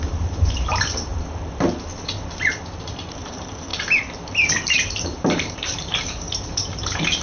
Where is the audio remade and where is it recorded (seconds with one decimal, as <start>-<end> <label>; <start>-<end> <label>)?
0.0-1.1 remade; 1.1-2.8 recorded; 2.8-3.7 remade; 3.7-4.5 recorded; 4.5-7.2 remade